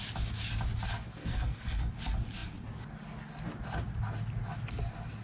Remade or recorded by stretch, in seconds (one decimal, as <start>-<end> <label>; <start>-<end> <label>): 0.0-1.2 recorded; 1.2-1.9 remade; 1.9-5.2 recorded